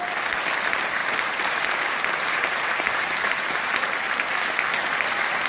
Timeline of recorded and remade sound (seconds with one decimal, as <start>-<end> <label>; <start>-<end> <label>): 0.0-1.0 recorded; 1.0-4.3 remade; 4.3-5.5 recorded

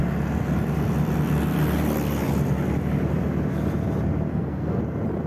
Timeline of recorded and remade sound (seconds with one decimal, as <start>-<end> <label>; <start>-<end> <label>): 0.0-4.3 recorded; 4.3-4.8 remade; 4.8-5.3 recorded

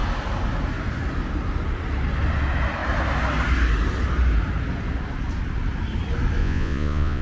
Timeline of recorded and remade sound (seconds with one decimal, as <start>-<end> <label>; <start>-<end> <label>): 0.0-6.4 recorded; 6.4-7.2 remade

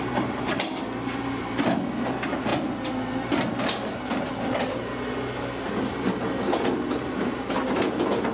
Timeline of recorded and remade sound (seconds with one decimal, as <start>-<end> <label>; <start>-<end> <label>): 0.0-8.3 recorded

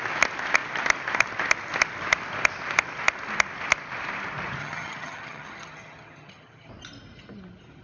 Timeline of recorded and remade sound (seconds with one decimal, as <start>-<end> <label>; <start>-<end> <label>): 0.0-4.6 recorded; 4.6-6.7 remade; 6.7-7.8 recorded

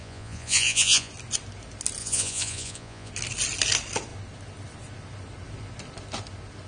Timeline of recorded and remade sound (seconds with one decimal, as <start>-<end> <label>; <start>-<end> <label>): 0.0-1.1 remade; 1.1-2.0 recorded; 2.0-3.1 remade; 3.1-6.7 recorded

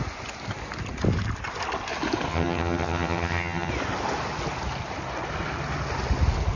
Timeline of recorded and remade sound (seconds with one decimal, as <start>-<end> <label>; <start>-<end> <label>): 0.0-2.3 recorded; 2.3-3.7 remade; 3.7-6.6 recorded